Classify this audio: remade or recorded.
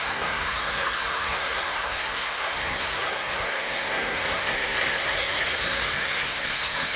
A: remade